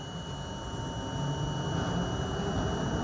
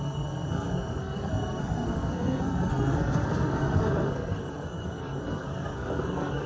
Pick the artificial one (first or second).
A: second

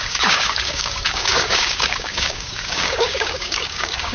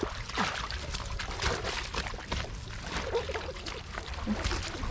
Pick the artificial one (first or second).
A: first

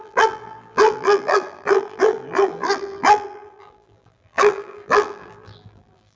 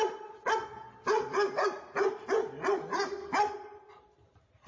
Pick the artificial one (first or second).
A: first